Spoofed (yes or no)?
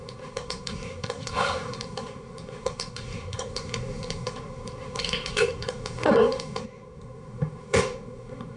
yes